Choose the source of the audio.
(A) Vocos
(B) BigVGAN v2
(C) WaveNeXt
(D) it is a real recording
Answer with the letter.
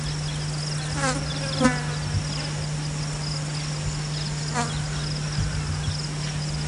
D